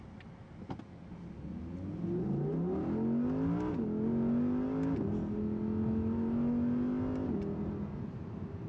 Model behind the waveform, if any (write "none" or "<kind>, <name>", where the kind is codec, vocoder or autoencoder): none